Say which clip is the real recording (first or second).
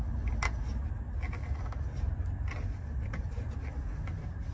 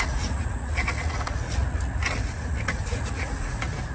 first